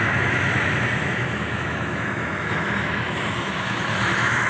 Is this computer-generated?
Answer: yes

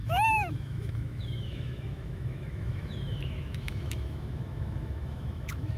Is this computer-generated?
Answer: yes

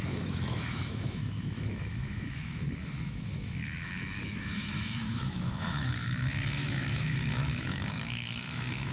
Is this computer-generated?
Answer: yes